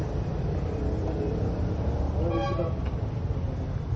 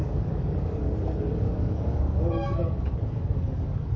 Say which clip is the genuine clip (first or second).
first